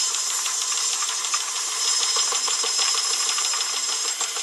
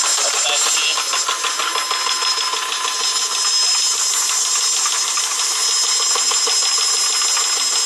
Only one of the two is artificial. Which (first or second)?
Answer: first